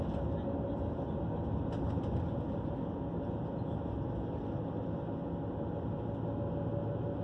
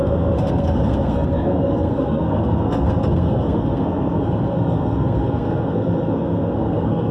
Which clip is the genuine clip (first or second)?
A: first